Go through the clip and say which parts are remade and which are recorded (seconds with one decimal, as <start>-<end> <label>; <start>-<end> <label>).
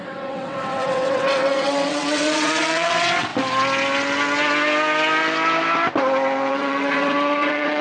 0.0-3.3 remade; 3.3-6.5 recorded; 6.5-7.8 remade